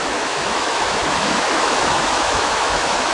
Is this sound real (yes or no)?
no